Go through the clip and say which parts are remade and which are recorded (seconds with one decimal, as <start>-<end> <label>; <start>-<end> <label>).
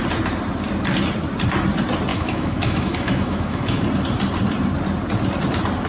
0.0-2.1 recorded; 2.1-3.8 remade; 3.8-5.9 recorded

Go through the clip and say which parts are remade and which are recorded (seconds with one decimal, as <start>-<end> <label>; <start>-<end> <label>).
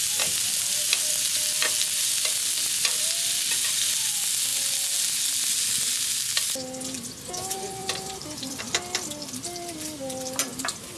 0.0-7.8 recorded; 7.8-8.6 remade; 8.6-10.5 recorded; 10.5-11.0 remade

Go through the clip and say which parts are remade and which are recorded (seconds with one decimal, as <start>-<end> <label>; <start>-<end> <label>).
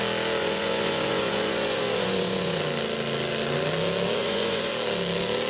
0.0-0.4 recorded; 0.4-2.6 remade; 2.6-4.2 recorded; 4.2-4.7 remade; 4.7-5.5 recorded